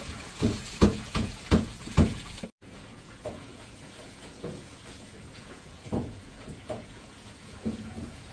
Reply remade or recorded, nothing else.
remade